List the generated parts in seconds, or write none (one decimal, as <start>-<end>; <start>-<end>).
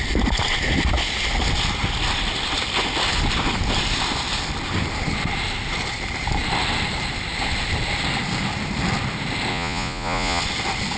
9.5-10.4